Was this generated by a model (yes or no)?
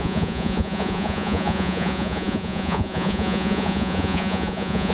yes